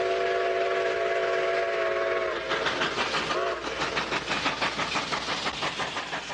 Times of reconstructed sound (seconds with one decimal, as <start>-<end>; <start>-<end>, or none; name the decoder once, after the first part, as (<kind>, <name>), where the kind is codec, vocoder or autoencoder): none